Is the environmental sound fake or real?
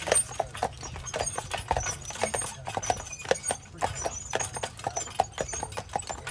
real